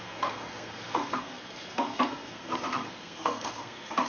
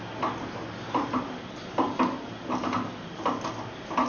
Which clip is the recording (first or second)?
second